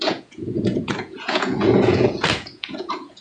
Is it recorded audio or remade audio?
remade